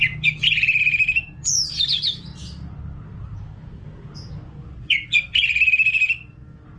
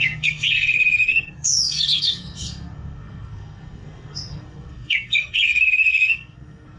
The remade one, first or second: second